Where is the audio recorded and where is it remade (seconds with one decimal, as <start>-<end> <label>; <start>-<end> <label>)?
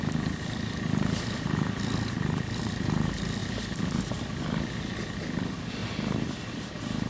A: 0.0-5.8 recorded; 5.8-7.1 remade